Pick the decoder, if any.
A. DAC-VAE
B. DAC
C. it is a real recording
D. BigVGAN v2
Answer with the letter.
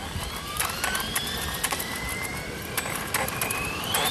C